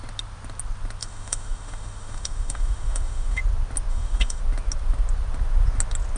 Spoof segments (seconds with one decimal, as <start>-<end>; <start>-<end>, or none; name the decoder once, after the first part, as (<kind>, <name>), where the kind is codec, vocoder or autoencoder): 1.0-3.4 (autoencoder, DAC-VAE); 3.9-4.4